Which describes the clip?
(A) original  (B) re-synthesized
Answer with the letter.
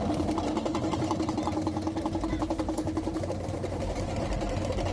A